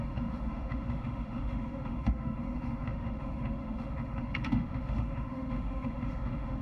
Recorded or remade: remade